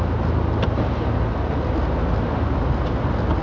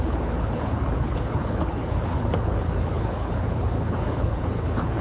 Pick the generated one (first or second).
second